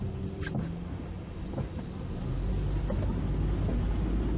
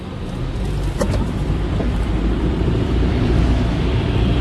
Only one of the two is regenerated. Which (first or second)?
second